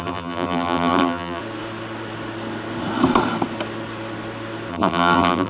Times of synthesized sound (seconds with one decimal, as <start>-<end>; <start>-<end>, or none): 0.0-1.4; 4.7-5.5